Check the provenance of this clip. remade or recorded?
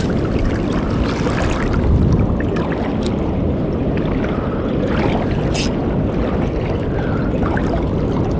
recorded